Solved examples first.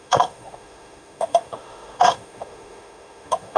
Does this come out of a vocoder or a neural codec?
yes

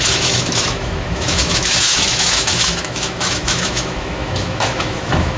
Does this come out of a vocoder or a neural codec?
yes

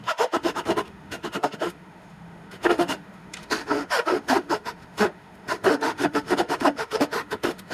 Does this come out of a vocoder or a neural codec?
yes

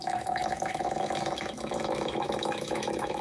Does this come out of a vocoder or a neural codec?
yes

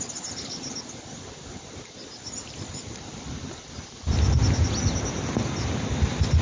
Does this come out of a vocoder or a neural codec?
no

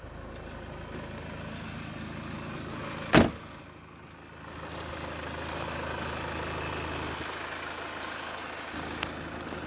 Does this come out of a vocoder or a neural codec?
no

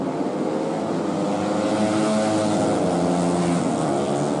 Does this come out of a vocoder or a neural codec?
no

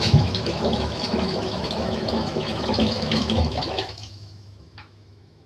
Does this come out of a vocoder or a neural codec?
yes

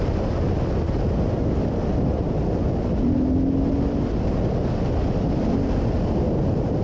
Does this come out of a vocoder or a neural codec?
no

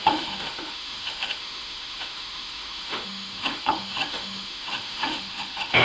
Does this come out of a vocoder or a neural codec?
yes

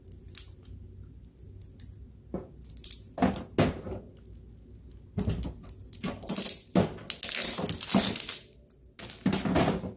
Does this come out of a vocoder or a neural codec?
no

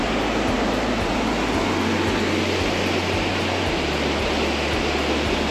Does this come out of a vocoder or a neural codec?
no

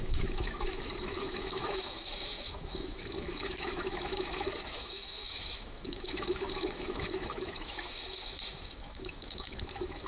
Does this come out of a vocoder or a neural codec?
yes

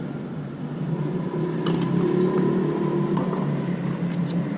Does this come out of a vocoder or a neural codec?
no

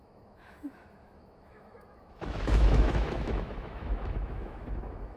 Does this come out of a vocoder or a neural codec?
yes